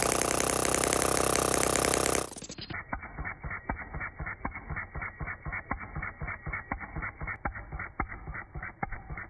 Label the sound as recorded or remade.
recorded